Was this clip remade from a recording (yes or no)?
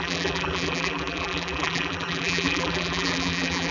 yes